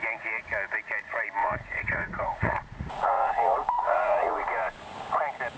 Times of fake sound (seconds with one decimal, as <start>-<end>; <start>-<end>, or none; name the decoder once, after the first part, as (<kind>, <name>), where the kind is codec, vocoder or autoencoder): 1.4-4.8 (vocoder, Vocos)